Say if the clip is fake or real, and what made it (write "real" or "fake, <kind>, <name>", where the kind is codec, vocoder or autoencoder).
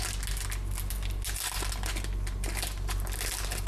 real